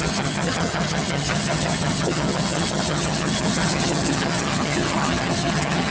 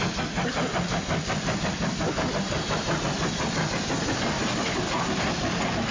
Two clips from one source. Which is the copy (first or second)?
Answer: first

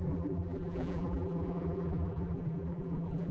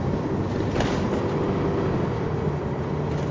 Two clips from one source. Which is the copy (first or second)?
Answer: first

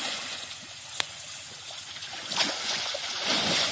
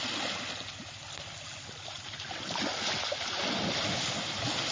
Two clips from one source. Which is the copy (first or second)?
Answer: first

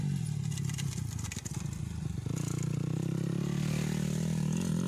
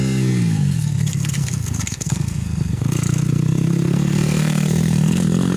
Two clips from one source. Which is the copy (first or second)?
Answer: second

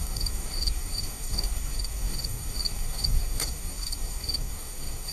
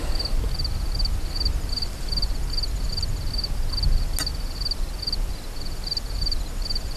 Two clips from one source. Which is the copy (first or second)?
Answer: first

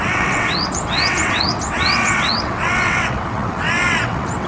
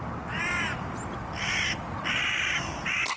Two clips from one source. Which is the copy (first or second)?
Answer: first